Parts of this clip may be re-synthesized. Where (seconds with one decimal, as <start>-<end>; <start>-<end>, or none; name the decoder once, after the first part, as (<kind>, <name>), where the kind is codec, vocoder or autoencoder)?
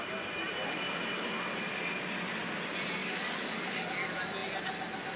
3.0-3.9 (codec, DAC)